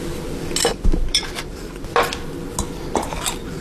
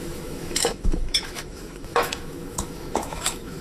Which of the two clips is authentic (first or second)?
first